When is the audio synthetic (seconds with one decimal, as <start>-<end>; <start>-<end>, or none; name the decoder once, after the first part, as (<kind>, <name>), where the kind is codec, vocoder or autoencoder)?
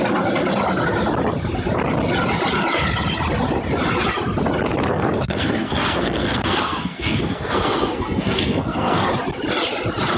4.9-9.1 (codec, SNAC)